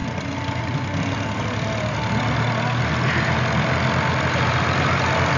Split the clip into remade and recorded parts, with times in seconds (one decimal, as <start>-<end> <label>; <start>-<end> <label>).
0.0-5.4 recorded